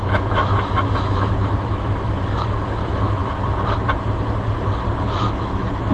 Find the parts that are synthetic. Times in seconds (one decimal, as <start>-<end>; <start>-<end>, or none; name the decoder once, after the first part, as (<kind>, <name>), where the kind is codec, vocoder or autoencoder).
0.0-3.2 (autoencoder, DAC-VAE); 5.0-5.9